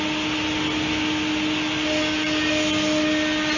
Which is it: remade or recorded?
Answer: recorded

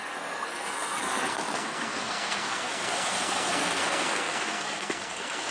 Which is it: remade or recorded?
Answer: remade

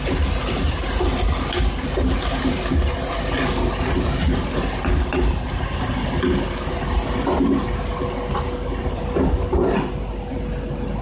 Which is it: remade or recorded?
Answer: recorded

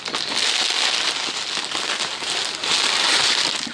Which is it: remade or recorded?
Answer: recorded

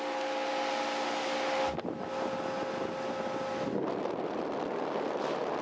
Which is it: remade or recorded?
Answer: recorded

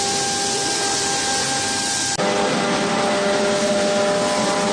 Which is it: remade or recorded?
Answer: recorded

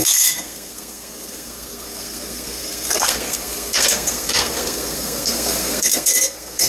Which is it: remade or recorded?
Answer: remade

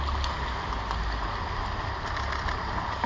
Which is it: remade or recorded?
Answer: recorded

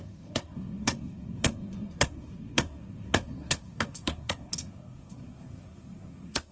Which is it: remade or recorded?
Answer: remade